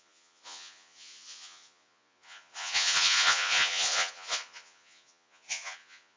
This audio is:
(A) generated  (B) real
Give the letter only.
A